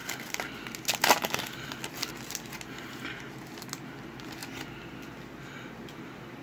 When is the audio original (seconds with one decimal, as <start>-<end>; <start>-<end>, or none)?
0.0-6.4